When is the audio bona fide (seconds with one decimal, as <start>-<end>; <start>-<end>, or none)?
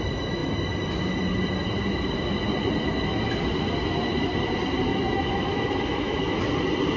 0.0-4.9; 6.4-7.0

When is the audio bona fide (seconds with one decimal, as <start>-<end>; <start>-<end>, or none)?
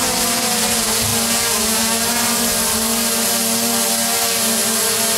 0.0-5.2